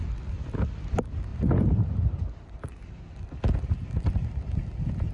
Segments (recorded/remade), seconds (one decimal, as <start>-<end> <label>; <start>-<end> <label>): 0.0-5.1 recorded